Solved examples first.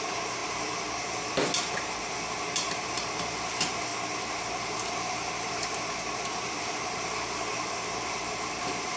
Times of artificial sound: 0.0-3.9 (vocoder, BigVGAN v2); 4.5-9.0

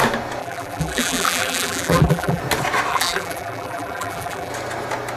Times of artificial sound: 0.4-2.4 (vocoder, BigVGAN v2); 2.9-4.5

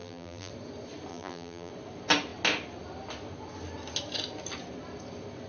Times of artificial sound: 0.0-0.5 (vocoder, BigVGAN v2); 1.1-1.7